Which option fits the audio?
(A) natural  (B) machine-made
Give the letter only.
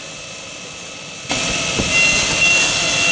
A